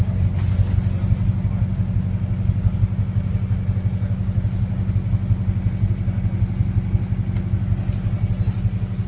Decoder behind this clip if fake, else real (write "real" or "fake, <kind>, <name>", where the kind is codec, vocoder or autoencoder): real